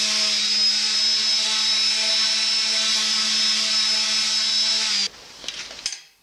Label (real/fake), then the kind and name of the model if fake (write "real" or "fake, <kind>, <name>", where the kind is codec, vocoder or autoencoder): real